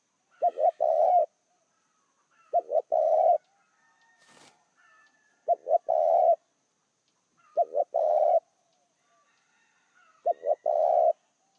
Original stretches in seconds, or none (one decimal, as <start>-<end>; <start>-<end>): 0.0-0.4; 3.3-6.8; 8.7-11.6